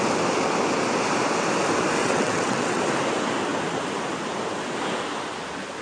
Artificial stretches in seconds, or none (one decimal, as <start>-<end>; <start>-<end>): 2.0-2.8